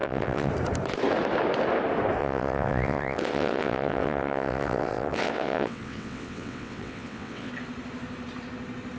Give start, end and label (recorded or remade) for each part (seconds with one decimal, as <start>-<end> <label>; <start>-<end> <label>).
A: 0.0-0.5 remade; 0.5-2.2 recorded; 2.2-7.5 remade; 7.5-9.0 recorded